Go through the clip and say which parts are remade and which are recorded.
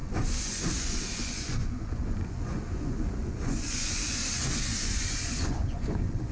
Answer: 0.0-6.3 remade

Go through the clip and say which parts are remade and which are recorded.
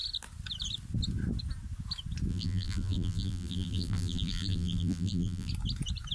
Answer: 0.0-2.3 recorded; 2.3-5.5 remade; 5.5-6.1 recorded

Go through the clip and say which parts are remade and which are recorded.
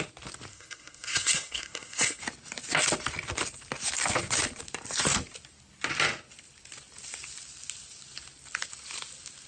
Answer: 0.0-0.5 recorded; 0.5-2.2 remade; 2.2-9.5 recorded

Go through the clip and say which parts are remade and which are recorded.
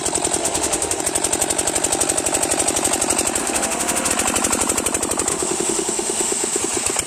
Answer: 0.0-0.4 recorded; 0.4-1.0 remade; 1.0-3.4 recorded; 3.4-4.1 remade; 4.1-5.3 recorded; 5.3-6.6 remade; 6.6-7.1 recorded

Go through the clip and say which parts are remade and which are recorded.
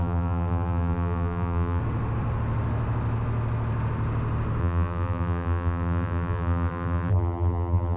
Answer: 0.0-1.8 remade; 1.8-4.6 recorded; 4.6-8.0 remade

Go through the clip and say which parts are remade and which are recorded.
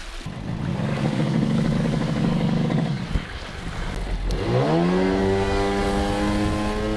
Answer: 0.0-0.7 recorded; 0.7-3.0 remade; 3.0-5.2 recorded; 5.2-5.8 remade; 5.8-7.0 recorded